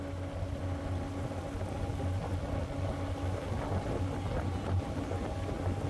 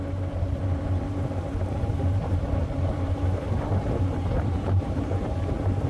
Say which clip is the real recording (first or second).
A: first